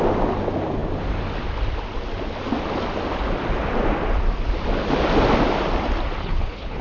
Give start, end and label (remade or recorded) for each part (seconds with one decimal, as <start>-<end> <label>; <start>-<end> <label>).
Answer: 0.0-6.2 recorded; 6.2-6.8 remade